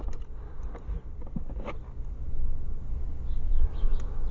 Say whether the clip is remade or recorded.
recorded